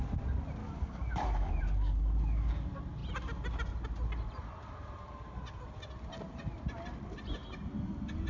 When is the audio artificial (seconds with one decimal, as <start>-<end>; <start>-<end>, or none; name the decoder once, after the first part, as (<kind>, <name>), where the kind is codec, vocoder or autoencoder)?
0.6-2.5 (codec, DAC)